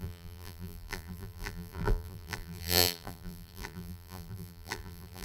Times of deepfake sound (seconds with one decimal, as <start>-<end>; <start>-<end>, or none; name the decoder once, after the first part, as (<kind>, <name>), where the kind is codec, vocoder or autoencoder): 0.0-5.2 (vocoder, BigVGAN v2)